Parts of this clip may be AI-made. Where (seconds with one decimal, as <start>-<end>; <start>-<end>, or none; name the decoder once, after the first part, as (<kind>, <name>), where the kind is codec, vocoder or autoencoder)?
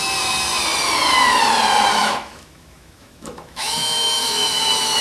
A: 2.0-5.0 (autoencoder, DAC-VAE)